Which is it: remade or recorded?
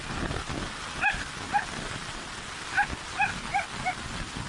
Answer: recorded